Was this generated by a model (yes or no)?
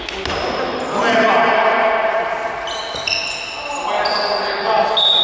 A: no